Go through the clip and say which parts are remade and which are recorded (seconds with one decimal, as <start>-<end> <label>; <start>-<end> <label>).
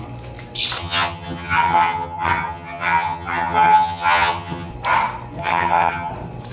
0.0-0.8 recorded; 0.8-4.7 remade; 4.7-5.4 recorded; 5.4-6.1 remade; 6.1-6.5 recorded